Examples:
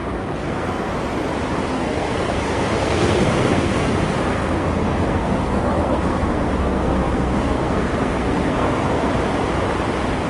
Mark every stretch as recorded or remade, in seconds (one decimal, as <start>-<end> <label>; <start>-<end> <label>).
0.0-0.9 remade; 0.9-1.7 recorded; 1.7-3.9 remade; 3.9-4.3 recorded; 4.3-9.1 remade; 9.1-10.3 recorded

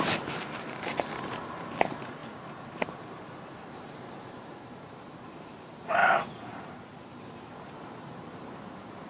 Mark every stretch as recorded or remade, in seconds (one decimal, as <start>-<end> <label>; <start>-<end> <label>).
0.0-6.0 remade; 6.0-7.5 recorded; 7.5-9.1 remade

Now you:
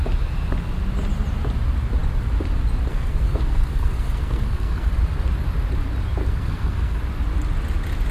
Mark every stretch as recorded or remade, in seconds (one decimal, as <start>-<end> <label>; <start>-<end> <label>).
0.0-2.9 recorded; 2.9-4.9 remade; 4.9-6.2 recorded; 6.2-7.0 remade; 7.0-8.1 recorded

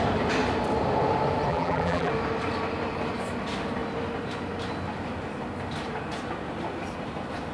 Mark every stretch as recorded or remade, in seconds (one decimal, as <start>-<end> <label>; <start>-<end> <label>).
0.0-1.5 recorded; 1.5-2.1 remade; 2.1-7.5 recorded